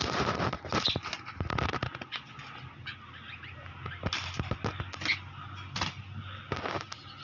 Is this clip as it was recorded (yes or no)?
yes